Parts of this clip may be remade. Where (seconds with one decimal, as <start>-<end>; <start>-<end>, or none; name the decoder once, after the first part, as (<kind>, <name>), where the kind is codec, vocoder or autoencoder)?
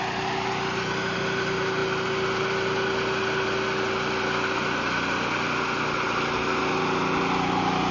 none